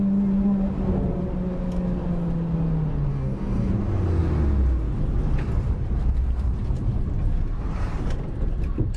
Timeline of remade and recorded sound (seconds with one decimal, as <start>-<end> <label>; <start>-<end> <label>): 0.0-3.1 recorded; 3.1-3.7 remade; 3.7-9.0 recorded